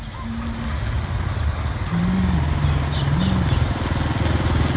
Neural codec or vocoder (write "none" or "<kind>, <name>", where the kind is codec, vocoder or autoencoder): none